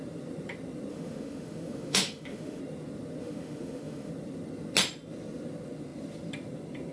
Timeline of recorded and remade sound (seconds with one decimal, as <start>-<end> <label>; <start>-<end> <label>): 0.0-0.9 recorded; 0.9-2.6 remade; 2.6-3.2 recorded; 3.2-4.1 remade; 4.1-6.9 recorded